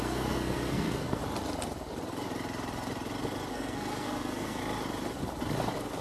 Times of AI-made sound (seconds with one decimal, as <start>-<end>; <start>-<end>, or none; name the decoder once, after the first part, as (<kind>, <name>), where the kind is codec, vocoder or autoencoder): 0.0-1.2 (codec, SNAC); 3.5-4.6